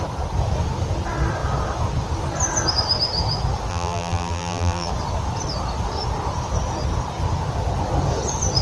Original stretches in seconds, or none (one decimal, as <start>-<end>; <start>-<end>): 0.0-3.7; 4.9-8.6

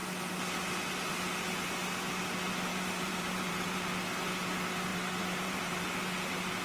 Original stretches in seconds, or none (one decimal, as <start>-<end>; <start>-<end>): 0.0-2.7; 3.5-4.9; 5.8-6.6

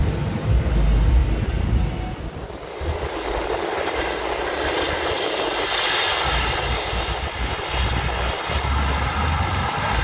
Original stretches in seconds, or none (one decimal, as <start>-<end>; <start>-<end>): 0.0-10.0

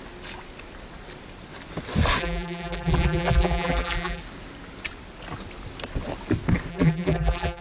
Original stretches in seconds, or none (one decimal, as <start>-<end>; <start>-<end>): 0.0-2.2; 4.2-6.7

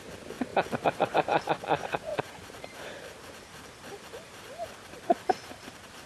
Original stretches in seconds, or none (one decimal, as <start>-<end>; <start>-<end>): 0.0-0.5; 1.5-2.1